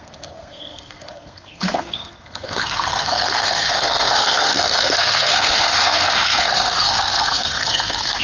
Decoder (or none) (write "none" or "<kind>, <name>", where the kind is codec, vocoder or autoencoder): codec, SNAC